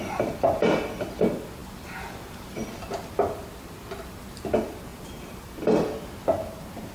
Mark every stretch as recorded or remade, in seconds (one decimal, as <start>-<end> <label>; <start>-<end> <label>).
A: 0.0-1.6 recorded; 1.6-4.3 remade; 4.3-4.9 recorded; 4.9-5.6 remade; 5.6-6.9 recorded